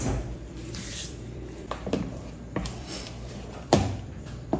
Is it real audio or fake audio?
fake